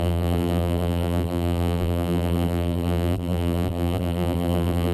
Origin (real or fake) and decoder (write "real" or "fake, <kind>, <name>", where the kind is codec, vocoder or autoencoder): fake, vocoder, BigVGAN v2